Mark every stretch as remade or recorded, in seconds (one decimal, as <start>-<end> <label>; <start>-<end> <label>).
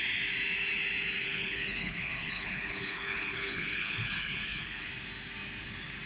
0.0-1.2 recorded; 1.2-4.9 remade; 4.9-6.1 recorded